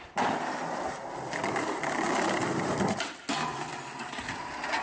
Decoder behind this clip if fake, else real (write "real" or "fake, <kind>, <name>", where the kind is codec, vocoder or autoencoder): real